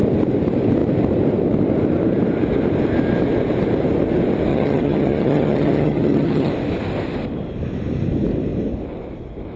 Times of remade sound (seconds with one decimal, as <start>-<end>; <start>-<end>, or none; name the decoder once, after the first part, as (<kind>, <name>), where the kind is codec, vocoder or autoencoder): 4.5-6.5 (vocoder, HiFi-GAN)